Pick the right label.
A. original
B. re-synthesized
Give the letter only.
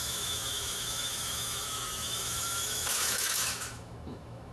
B